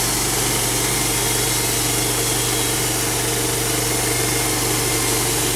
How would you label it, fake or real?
real